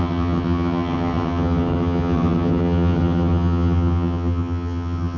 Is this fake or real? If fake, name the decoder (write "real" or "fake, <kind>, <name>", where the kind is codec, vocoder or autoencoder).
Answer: fake, vocoder, HiFi-GAN